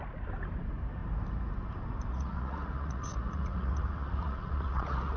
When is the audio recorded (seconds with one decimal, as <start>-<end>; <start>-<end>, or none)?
0.0-2.1